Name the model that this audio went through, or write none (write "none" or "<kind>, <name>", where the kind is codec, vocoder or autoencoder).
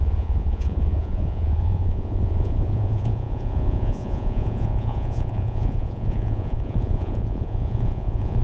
vocoder, Vocos